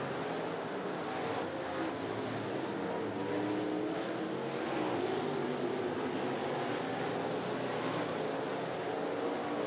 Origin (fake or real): real